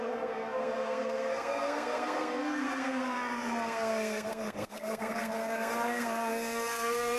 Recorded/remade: remade